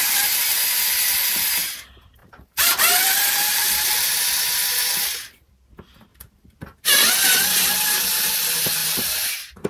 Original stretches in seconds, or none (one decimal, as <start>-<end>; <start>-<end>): 0.0-2.2; 4.1-6.1; 7.1-8.8